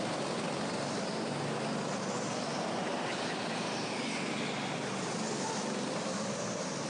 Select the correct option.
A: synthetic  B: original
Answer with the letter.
B